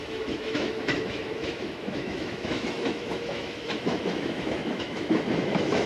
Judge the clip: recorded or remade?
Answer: remade